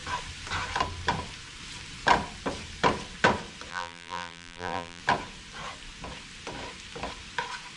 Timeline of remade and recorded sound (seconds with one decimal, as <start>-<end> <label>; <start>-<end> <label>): 0.0-3.7 recorded; 3.7-5.0 remade; 5.0-7.8 recorded